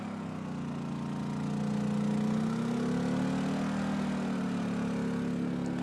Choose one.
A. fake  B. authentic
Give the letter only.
B